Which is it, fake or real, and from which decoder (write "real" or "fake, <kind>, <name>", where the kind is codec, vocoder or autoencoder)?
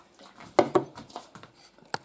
real